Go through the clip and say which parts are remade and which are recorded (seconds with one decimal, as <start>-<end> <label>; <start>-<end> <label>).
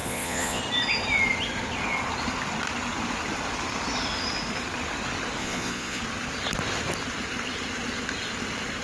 0.0-0.6 remade; 0.6-5.4 recorded; 5.4-6.0 remade; 6.0-8.8 recorded